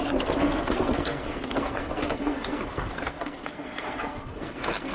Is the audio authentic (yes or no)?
no